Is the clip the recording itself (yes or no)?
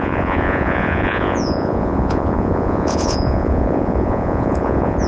no